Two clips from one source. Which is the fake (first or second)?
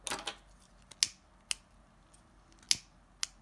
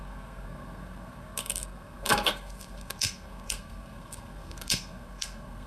second